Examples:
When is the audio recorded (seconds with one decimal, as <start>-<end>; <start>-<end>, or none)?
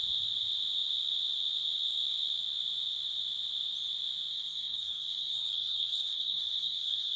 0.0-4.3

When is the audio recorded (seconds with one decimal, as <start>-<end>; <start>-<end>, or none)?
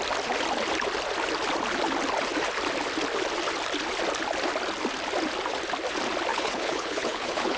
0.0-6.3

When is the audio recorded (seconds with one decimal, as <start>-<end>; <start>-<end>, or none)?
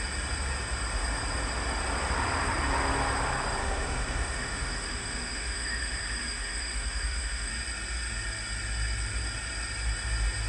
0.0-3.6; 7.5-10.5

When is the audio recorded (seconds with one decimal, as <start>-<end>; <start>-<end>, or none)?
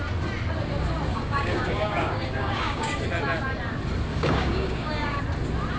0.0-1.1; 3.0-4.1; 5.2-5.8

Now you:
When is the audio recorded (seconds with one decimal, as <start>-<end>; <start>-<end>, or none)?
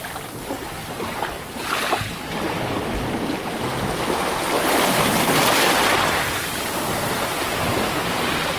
0.0-0.8; 1.6-8.6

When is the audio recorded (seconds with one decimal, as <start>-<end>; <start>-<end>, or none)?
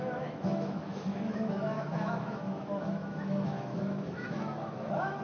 none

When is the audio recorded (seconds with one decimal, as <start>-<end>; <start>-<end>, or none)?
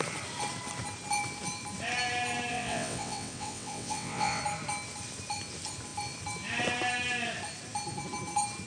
0.0-2.5; 4.4-8.7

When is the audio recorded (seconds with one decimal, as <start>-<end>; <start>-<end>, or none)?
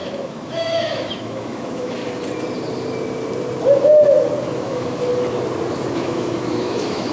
2.0-4.4; 5.1-5.9